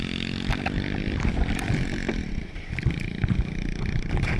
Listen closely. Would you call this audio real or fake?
fake